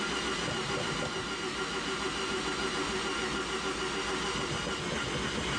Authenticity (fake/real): real